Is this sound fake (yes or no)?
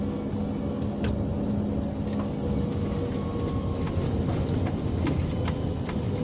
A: no